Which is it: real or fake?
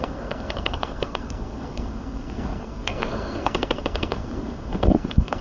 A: fake